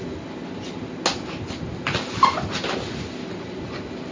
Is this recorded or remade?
recorded